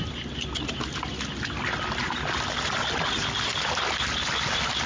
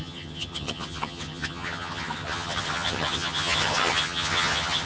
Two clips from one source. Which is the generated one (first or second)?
second